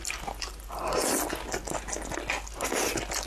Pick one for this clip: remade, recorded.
recorded